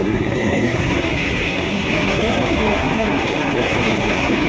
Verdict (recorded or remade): remade